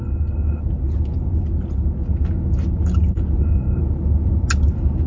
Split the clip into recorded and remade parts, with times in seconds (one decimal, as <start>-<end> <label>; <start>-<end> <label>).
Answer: 0.0-0.6 remade; 0.6-3.4 recorded; 3.4-3.8 remade; 3.8-5.1 recorded